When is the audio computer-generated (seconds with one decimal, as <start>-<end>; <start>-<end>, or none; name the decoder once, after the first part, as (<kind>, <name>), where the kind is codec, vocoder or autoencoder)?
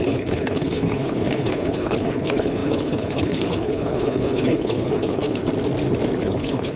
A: 0.0-5.4 (codec, HILCodec); 6.2-6.8